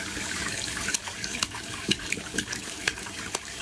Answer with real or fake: fake